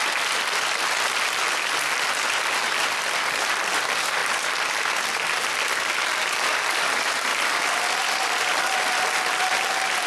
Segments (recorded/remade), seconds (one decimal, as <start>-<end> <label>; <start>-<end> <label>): 0.0-10.1 recorded